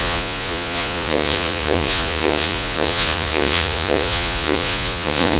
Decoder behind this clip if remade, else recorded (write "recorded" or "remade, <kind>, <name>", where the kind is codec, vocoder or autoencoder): remade, vocoder, Vocos